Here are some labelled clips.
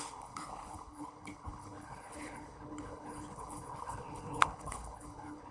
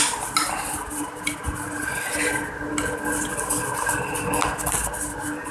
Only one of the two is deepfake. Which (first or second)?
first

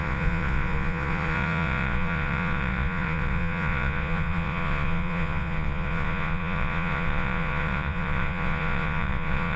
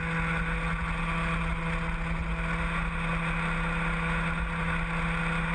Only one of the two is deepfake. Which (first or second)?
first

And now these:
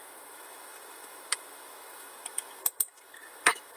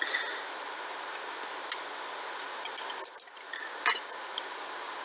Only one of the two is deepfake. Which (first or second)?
first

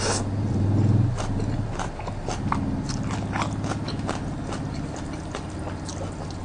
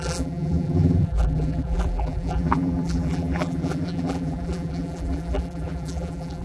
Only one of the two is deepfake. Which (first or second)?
second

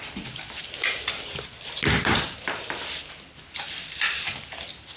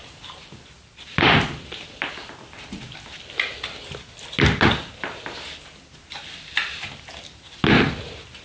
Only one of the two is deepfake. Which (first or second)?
first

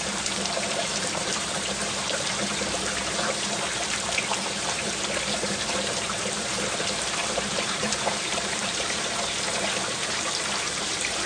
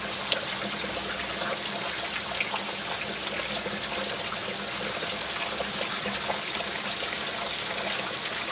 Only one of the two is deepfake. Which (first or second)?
first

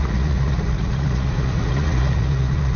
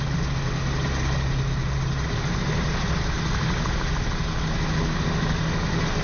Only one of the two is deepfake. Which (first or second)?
first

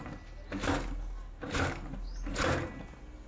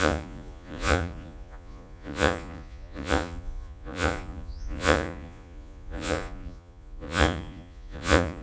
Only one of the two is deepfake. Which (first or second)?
second